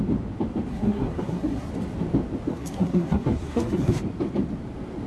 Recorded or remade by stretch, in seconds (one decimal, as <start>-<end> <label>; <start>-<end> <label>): 0.0-0.7 recorded; 0.7-1.7 remade; 1.7-2.5 recorded; 2.5-4.0 remade; 4.0-5.1 recorded